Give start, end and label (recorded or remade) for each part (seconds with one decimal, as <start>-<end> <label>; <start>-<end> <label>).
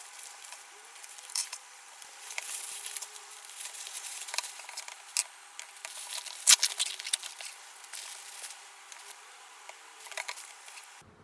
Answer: 0.0-5.1 remade; 5.1-10.1 recorded; 10.1-11.2 remade